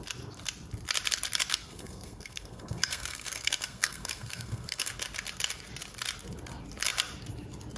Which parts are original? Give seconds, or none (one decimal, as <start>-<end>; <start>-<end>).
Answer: 0.0-1.5; 4.9-7.8